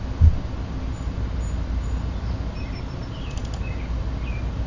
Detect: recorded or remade recorded